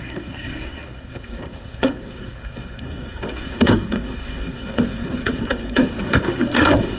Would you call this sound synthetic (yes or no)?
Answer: yes